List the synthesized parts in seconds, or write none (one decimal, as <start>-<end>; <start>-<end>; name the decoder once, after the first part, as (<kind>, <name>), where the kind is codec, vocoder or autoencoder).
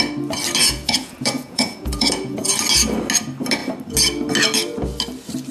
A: 0.6-2.5 (vocoder, Vocos)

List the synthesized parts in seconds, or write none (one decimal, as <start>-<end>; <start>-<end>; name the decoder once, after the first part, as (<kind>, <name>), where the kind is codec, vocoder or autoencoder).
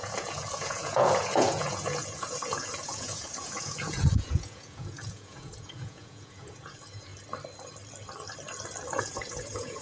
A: 0.0-7.1 (vocoder, Vocos); 9.0-9.8